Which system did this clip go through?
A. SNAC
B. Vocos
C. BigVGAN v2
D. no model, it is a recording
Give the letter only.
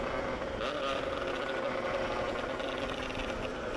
C